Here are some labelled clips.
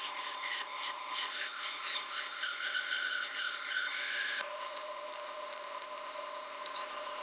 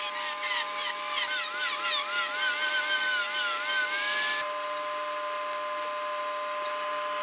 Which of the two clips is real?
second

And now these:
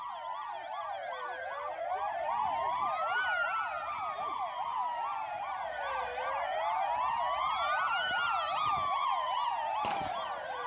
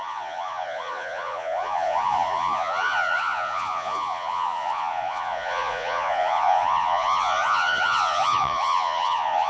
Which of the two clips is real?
first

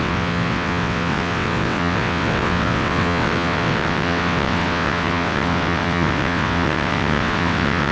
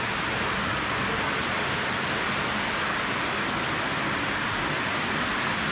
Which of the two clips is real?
second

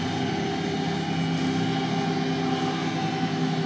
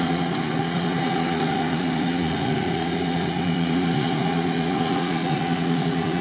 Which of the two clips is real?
first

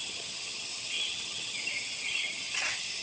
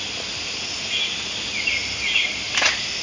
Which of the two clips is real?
second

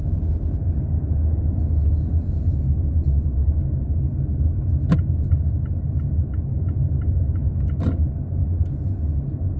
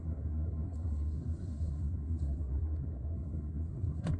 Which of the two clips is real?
first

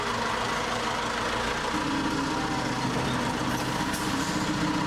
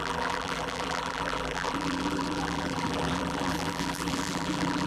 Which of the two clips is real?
first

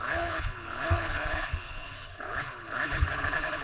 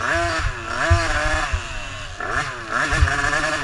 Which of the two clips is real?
second